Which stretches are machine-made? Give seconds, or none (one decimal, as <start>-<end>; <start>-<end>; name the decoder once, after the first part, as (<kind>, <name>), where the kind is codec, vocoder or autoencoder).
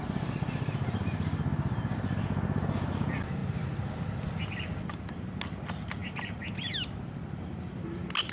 none